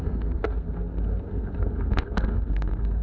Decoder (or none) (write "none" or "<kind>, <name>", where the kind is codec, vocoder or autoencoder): codec, SNAC